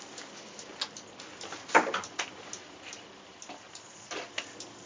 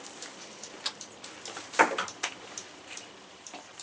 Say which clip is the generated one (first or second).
second